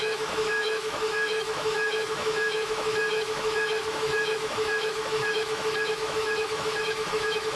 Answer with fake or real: fake